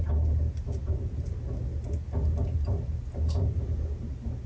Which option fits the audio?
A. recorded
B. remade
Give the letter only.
A